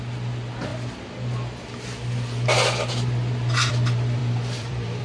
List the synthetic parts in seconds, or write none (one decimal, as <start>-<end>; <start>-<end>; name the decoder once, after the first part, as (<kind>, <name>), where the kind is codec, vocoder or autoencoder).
4.2-5.0 (vocoder, BigVGAN v2)